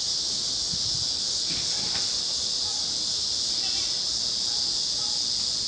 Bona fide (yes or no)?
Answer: yes